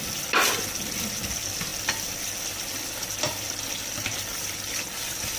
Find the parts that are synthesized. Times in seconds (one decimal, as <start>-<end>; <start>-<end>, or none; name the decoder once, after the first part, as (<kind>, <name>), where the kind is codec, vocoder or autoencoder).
none